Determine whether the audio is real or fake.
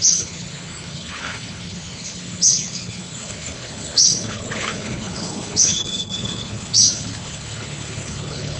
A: fake